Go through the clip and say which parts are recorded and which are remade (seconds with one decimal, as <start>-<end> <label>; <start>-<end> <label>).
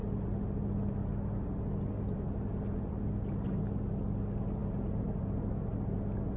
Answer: 0.0-6.4 recorded